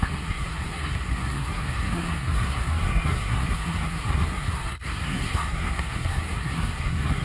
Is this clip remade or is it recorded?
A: remade